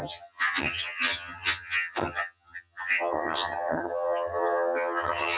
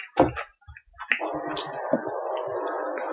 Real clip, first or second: second